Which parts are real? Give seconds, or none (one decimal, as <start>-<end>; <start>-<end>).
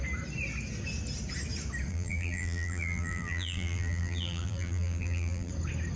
0.0-1.9; 5.5-6.0